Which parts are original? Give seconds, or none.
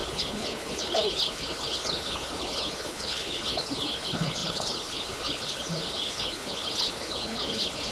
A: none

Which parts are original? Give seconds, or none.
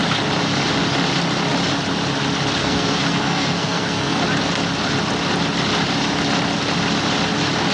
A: 0.0-2.6; 4.2-7.7